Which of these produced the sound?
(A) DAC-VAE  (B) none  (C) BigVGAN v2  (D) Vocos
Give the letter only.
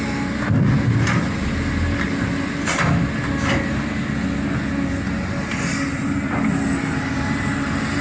B